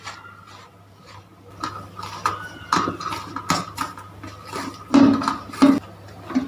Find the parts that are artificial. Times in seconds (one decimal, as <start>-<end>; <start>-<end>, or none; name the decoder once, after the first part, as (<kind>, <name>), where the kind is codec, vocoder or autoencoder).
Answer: none